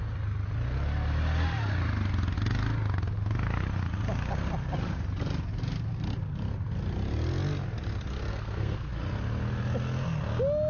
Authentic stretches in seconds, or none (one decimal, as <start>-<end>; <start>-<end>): 0.0-8.3; 8.9-10.7